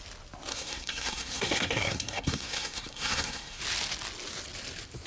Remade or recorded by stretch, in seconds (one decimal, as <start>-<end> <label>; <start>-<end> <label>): 0.0-0.5 recorded; 0.5-3.6 remade; 3.6-5.1 recorded